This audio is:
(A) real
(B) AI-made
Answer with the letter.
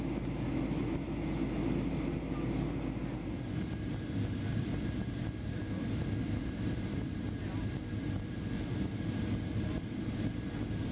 A